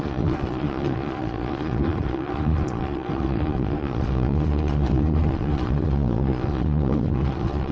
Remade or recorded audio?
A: remade